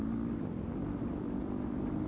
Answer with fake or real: fake